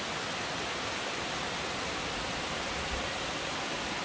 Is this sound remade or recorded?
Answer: recorded